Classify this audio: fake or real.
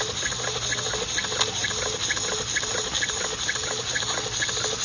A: real